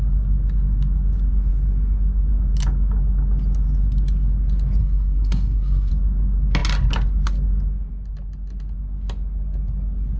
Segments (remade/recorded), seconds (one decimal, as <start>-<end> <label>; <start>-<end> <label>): 0.0-4.8 recorded; 4.8-5.9 remade; 5.9-10.2 recorded